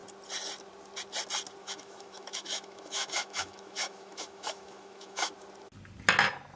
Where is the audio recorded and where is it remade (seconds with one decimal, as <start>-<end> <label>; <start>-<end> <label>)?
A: 0.0-1.6 recorded; 1.6-5.3 remade; 5.3-6.6 recorded